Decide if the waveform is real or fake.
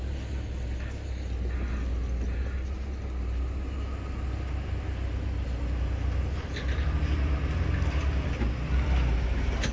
real